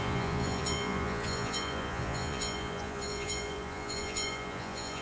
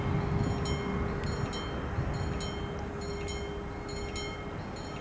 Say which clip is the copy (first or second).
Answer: first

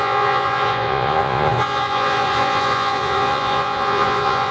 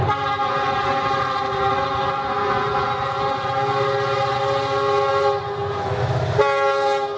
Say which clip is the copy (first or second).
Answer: first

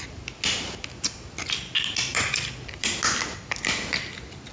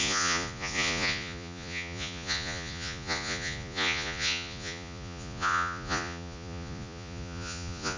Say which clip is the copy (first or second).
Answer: second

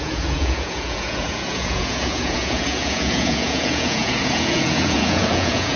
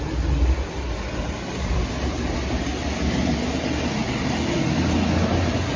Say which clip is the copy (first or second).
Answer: first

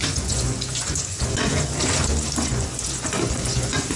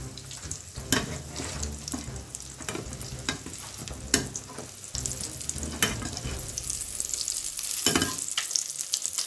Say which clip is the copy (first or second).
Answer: first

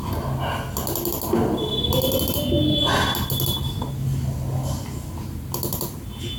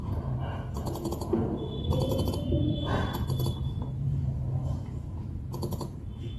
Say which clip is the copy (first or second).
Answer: second